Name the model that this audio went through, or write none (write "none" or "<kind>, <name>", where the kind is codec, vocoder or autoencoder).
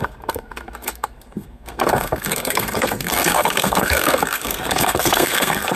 codec, SNAC